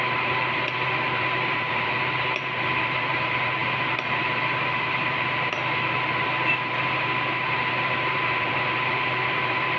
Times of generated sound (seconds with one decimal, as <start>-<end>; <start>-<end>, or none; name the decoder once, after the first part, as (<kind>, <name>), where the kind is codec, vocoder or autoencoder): 0.0-9.8 (vocoder, BigVGAN v2)

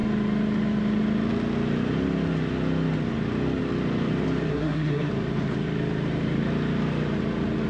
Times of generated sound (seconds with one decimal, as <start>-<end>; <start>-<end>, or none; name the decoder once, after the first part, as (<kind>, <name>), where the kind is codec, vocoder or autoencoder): 4.5-5.1 (codec, SNAC)

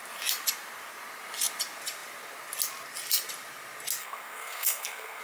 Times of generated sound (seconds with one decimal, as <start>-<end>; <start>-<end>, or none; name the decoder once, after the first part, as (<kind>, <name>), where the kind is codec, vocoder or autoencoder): 4.0-5.2 (codec, SNAC)